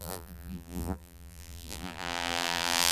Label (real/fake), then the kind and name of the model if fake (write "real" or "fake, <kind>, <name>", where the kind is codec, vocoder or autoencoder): fake, vocoder, BigVGAN v2